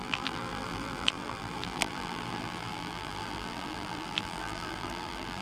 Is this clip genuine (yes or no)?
no